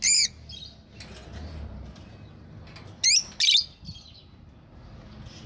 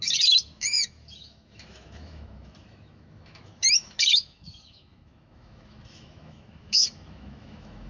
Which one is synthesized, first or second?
second